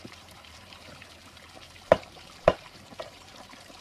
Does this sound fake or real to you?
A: fake